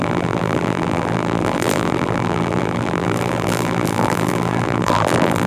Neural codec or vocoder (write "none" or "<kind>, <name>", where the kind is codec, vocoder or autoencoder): vocoder, BigVGAN v2